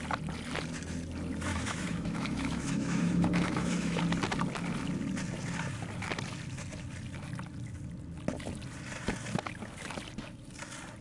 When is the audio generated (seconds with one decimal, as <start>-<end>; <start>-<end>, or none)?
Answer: 1.5-4.0